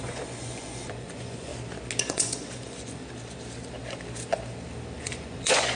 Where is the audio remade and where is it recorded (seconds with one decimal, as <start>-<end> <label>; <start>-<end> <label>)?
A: 0.0-1.5 remade; 1.5-2.0 recorded; 2.0-3.0 remade; 3.0-5.0 recorded; 5.0-5.8 remade